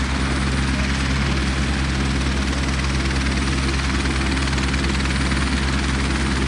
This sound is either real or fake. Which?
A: real